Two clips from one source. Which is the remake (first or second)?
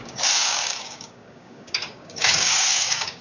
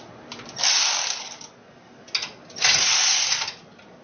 first